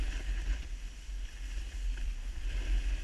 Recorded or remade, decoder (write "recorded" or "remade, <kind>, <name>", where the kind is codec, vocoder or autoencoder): recorded